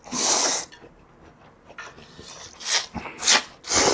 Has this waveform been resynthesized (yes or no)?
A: no